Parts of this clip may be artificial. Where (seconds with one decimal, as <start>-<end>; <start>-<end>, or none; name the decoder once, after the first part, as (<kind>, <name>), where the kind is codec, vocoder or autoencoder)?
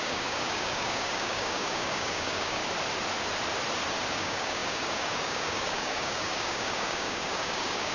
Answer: 0.0-2.6 (codec, DAC); 4.1-7.9